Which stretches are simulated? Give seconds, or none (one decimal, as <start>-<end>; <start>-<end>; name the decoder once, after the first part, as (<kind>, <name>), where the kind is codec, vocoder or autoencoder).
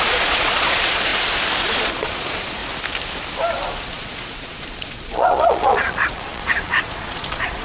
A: 0.0-1.1 (vocoder, Vocos); 1.8-2.6; 3.9-7.6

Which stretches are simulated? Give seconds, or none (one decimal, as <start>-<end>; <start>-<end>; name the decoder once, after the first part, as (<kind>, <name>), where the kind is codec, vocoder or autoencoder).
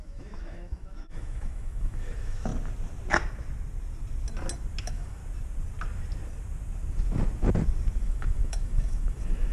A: 0.0-2.5 (autoencoder, DAC-VAE); 4.8-5.2; 8.0-9.5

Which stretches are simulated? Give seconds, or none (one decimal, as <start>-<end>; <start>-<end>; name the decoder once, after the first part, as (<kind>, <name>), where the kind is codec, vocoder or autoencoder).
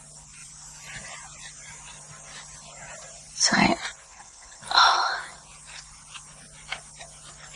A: 4.1-4.6 (codec, HILCodec)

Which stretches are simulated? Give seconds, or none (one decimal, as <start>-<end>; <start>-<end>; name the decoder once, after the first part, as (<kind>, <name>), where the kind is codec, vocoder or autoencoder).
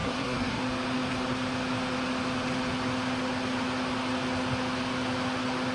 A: 0.0-0.6 (codec, SNAC)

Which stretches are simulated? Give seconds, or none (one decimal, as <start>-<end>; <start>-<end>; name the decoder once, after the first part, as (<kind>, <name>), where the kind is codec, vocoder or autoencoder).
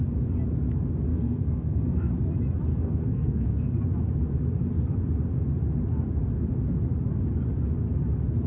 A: 1.1-2.1 (codec, SNAC); 2.7-3.8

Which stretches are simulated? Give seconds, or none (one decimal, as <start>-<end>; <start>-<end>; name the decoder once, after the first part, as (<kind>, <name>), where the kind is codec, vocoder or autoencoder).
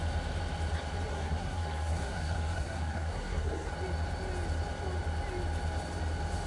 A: 1.1-3.7 (codec, SNAC)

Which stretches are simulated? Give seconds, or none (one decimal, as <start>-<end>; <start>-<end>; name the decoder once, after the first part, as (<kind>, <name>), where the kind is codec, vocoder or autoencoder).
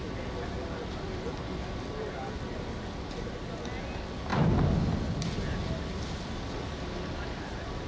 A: none